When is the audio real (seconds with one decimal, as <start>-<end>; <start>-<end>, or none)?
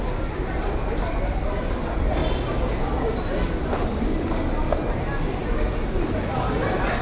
0.0-7.0